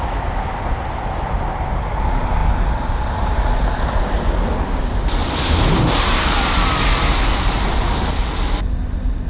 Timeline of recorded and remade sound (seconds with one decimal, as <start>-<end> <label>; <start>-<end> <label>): 0.0-5.2 recorded; 5.2-6.9 remade; 6.9-9.3 recorded